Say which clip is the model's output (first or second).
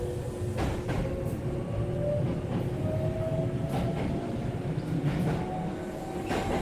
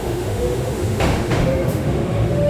second